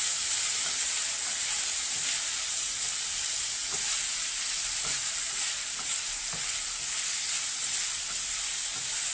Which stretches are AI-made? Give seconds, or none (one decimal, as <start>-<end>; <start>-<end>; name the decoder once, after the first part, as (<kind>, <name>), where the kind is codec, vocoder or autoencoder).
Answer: none